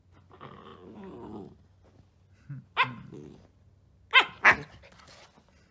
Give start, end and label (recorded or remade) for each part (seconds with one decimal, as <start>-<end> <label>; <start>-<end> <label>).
0.0-5.7 recorded